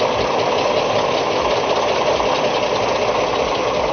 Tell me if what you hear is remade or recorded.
recorded